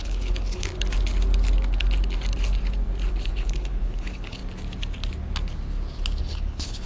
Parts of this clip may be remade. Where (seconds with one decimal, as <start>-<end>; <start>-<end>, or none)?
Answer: 0.0-0.7; 3.3-4.4; 6.2-6.9